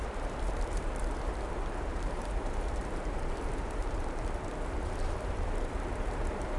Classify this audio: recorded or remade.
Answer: remade